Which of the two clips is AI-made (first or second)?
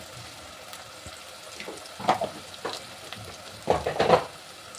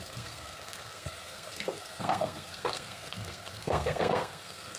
second